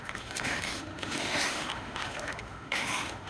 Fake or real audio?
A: fake